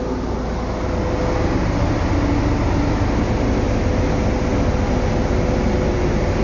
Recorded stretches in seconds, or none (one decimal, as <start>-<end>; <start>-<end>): 0.0-6.4